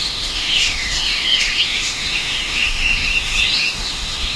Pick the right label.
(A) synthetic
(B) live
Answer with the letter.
A